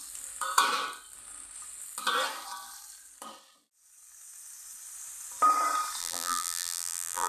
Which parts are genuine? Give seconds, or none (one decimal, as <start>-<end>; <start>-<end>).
0.0-6.0